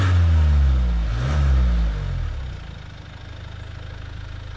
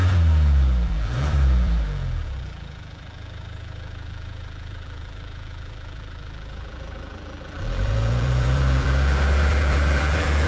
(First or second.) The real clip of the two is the first